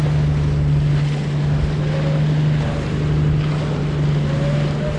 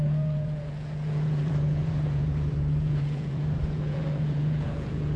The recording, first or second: first